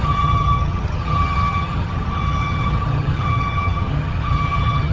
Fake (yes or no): yes